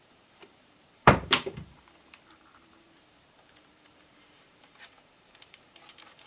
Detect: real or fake fake